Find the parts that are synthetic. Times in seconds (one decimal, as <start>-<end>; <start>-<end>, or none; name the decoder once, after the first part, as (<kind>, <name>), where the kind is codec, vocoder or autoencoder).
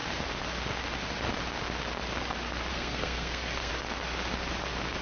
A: 2.7-3.7 (codec, SNAC)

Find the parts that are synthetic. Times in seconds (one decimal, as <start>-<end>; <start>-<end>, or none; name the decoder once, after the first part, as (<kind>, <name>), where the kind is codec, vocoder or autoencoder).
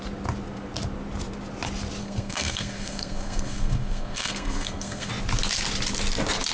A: 2.0-5.1 (codec, SNAC)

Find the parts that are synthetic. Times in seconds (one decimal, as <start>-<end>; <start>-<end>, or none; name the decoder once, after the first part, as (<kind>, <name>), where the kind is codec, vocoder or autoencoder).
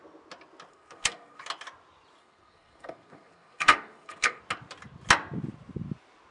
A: 0.7-1.4 (codec, SNAC); 2.2-4.4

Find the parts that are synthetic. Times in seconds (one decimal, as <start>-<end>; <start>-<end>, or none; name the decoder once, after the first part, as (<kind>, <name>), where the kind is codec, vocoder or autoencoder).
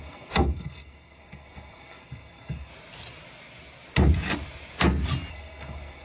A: 0.0-2.7 (codec, SNAC); 5.3-6.0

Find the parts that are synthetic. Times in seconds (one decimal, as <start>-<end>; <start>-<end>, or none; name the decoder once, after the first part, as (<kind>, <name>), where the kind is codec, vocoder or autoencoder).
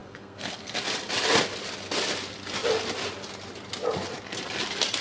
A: 0.0-0.8 (codec, SNAC)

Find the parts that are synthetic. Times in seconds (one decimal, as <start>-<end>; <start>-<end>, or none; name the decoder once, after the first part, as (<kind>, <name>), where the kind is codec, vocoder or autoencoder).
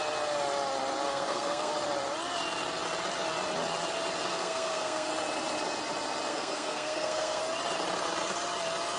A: 1.1-1.7 (codec, SNAC); 4.3-5.1; 6.3-7.4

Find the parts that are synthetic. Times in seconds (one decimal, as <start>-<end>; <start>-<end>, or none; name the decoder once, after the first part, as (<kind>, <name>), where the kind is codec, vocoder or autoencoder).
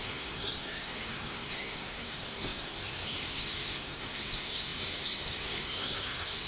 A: 0.0-6.5 (codec, SNAC)